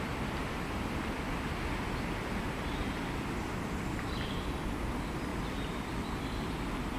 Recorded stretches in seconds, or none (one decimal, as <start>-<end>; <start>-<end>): 0.0-7.0